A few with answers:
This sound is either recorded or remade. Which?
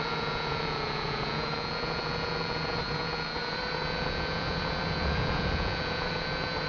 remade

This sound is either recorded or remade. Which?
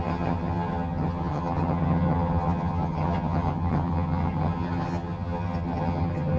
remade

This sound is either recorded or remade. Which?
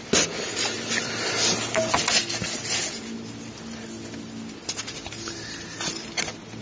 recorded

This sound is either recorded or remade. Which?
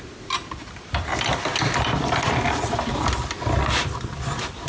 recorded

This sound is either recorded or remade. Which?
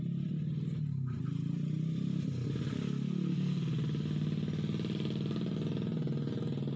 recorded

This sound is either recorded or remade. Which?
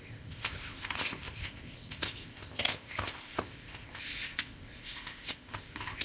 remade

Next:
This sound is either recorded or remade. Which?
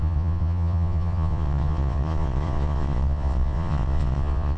remade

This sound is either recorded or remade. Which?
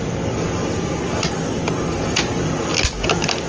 recorded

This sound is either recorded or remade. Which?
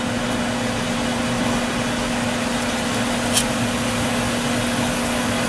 recorded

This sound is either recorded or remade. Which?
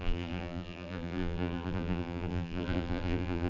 remade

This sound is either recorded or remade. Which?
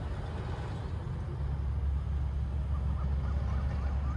recorded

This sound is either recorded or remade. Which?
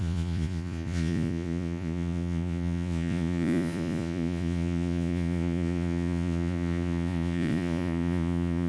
remade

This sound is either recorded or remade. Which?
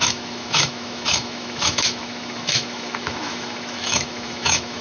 remade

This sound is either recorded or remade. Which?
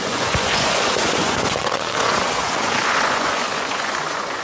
remade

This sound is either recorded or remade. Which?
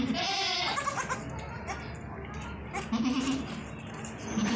recorded